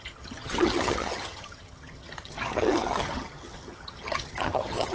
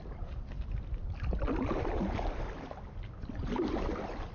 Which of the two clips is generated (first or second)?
first